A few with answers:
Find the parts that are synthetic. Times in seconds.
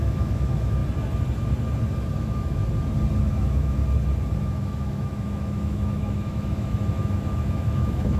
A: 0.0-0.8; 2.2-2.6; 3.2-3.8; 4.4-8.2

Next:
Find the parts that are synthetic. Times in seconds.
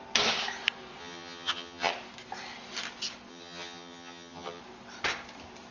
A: 1.0-1.9; 3.3-4.6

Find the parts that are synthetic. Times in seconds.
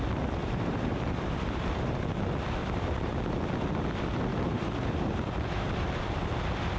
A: 0.4-2.0; 2.6-3.2; 4.3-6.3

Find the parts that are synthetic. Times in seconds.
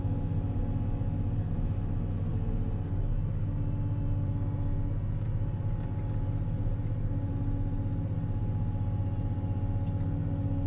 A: none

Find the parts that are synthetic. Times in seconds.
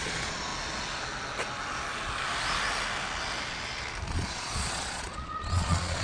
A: 0.0-0.5; 4.1-6.0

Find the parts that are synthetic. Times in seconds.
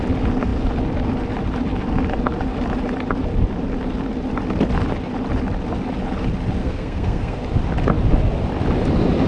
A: 6.6-7.4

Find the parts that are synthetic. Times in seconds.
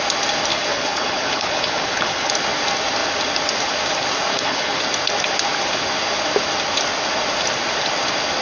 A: 0.5-2.3; 4.3-4.8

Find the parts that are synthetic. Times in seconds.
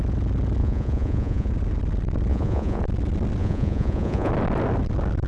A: 0.6-1.5; 2.3-2.8; 3.4-4.3